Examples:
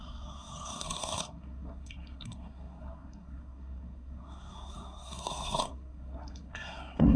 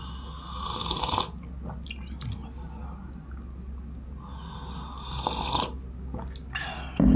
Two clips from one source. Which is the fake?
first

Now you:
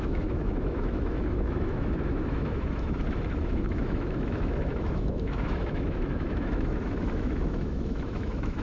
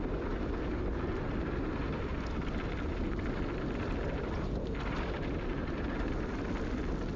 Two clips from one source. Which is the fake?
first